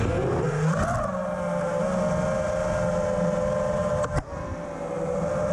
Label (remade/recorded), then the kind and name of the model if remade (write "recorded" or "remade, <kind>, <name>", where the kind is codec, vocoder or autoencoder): recorded